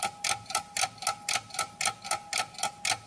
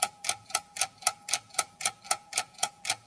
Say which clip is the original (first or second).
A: first